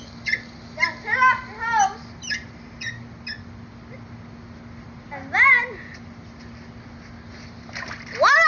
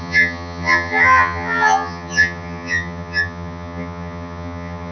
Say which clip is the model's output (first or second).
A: second